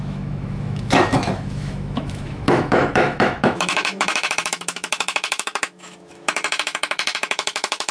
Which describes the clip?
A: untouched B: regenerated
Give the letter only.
B